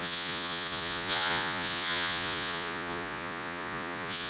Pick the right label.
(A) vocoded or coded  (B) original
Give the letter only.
A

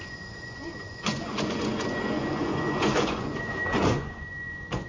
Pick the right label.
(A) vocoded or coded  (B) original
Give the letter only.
A